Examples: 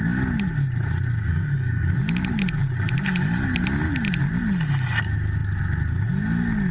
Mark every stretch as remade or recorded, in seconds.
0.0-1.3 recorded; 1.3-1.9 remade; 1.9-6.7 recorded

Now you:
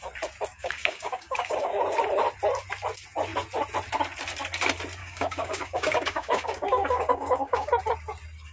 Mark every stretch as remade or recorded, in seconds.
0.0-0.5 recorded; 0.5-1.8 remade; 1.8-5.0 recorded; 5.0-7.8 remade; 7.8-8.5 recorded

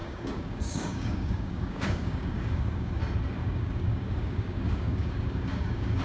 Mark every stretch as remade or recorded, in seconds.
0.0-3.0 remade; 3.0-3.4 recorded; 3.4-6.0 remade

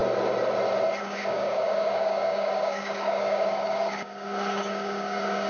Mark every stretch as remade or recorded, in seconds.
0.0-1.0 recorded; 1.0-5.5 remade

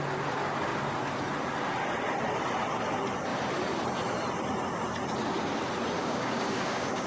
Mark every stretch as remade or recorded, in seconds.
0.0-6.0 recorded; 6.0-7.1 remade

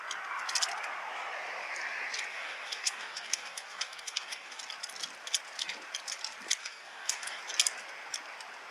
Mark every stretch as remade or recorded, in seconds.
0.0-2.3 recorded; 2.3-4.6 remade; 4.6-6.6 recorded; 6.6-7.4 remade; 7.4-8.7 recorded

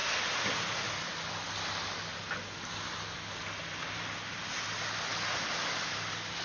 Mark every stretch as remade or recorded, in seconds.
0.0-6.4 recorded